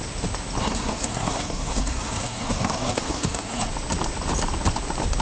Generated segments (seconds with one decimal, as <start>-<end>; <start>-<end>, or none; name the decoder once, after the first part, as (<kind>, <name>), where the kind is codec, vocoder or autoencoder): 0.6-3.7 (codec, SNAC)